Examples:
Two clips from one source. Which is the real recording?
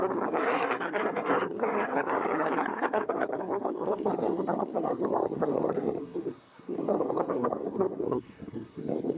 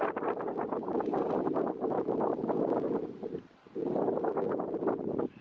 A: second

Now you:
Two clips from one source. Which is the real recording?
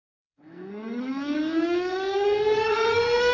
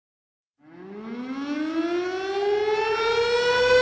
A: second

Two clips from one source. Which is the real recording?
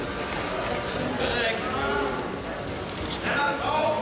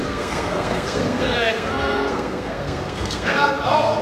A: first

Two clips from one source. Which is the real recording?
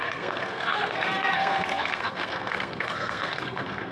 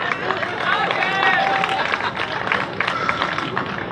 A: second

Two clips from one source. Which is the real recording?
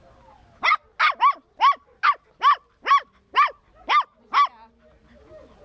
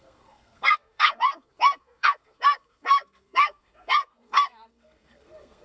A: first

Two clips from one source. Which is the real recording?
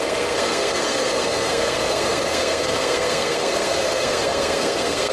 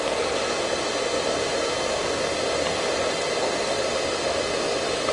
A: second